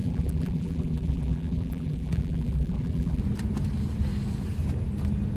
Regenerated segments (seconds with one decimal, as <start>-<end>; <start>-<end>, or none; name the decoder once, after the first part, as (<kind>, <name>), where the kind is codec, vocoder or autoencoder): 0.0-3.2 (vocoder, BigVGAN v2)